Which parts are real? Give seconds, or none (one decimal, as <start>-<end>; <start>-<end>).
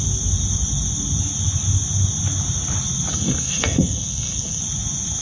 0.0-3.1; 4.6-5.2